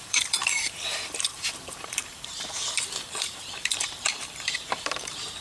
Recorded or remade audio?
remade